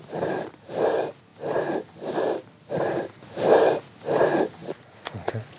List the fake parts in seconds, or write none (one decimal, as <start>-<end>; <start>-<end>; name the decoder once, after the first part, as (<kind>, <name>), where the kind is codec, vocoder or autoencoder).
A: 4.6-5.6 (vocoder, Vocos)